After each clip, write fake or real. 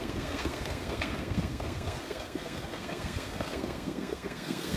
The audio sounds fake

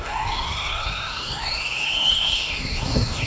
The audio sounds fake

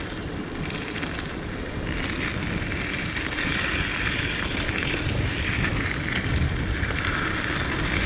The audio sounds real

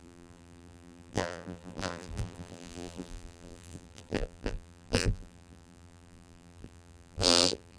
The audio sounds fake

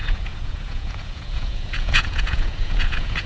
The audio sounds fake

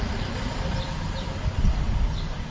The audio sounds real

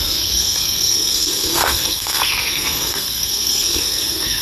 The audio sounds fake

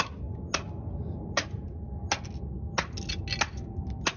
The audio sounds real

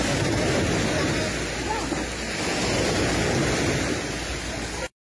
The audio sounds real